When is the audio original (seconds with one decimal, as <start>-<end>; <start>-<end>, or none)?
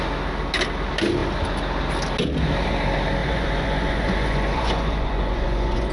0.0-3.2